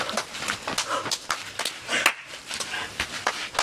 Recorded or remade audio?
recorded